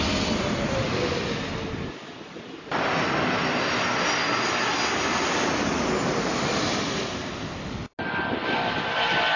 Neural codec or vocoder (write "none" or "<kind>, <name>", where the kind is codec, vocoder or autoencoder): none